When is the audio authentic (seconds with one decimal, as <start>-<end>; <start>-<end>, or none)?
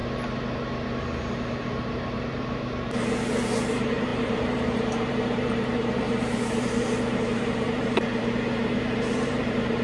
0.0-1.2